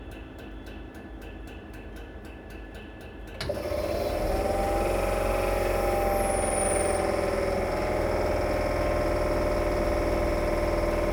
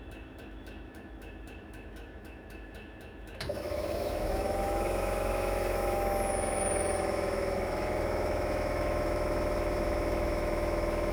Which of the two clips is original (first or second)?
first